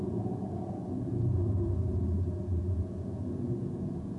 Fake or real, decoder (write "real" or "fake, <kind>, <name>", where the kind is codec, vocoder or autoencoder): fake, vocoder, Vocos